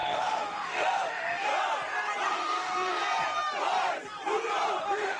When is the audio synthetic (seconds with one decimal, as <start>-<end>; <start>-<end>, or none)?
0.0-1.5; 2.3-3.0; 4.8-5.2